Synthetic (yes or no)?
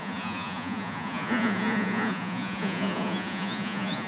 yes